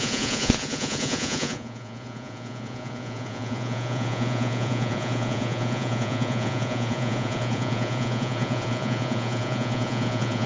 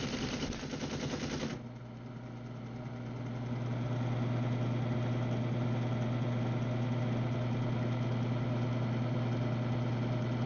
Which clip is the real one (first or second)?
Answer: second